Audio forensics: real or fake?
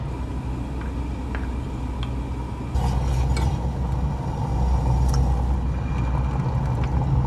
real